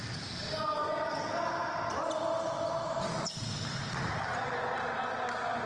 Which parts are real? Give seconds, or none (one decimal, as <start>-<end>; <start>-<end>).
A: 0.0-5.7